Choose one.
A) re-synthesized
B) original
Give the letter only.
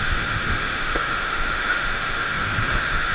A